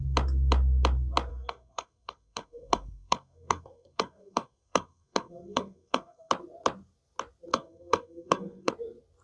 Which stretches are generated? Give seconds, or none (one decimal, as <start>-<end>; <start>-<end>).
1.3-6.3; 7.5-8.7

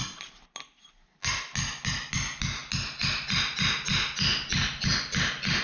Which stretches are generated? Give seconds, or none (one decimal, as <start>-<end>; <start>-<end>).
none

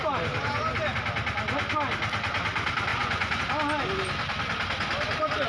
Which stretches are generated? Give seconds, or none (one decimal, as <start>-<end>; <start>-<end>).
2.9-3.4

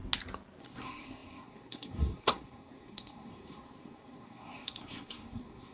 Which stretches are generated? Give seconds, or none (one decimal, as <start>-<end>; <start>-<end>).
0.6-5.7

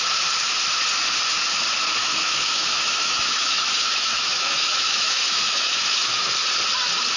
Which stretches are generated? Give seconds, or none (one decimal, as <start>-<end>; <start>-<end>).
2.0-6.3

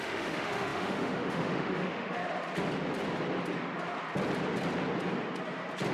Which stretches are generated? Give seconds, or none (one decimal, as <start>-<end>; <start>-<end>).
0.0-2.2

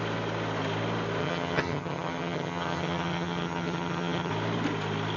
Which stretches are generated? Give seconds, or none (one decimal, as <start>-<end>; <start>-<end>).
1.2-4.3

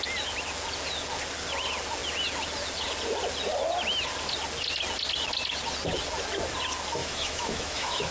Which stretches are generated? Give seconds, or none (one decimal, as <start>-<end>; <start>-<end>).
7.0-8.1